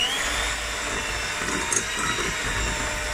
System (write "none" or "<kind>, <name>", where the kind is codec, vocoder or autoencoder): none